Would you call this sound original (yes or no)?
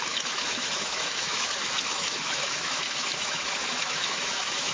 no